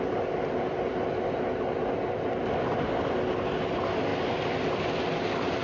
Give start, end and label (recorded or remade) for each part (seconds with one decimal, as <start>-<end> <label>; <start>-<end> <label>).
0.0-5.6 recorded